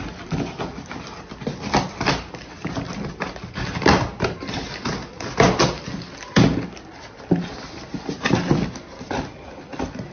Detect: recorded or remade recorded